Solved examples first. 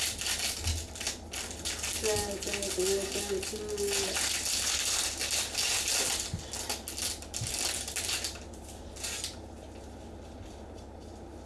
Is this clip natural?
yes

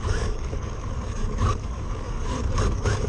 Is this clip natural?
no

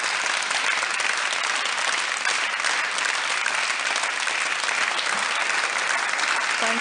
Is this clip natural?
yes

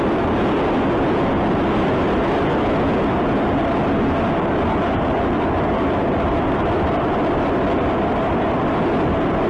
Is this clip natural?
yes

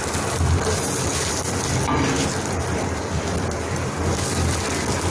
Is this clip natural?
yes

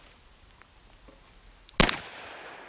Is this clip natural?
yes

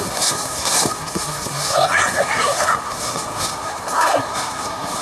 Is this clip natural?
no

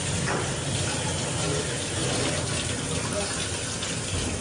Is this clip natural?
yes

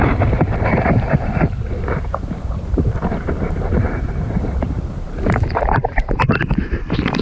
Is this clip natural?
no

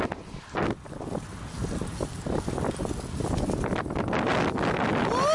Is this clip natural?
yes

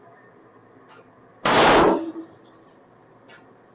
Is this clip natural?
yes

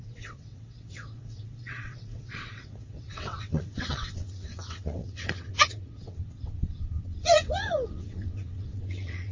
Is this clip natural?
no